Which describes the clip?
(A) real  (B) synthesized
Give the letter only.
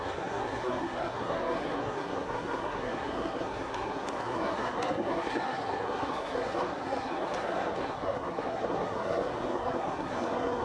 B